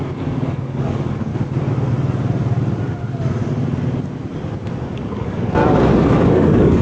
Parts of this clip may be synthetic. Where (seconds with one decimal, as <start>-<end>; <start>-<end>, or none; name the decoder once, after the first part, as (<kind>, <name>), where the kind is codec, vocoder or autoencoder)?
0.0-1.3 (codec, DAC); 4.8-5.6; 6.2-6.8